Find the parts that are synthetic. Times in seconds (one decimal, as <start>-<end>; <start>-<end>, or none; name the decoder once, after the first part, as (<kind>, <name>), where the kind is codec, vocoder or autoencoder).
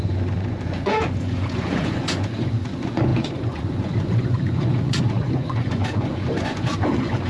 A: 0.0-7.3 (vocoder, Vocos)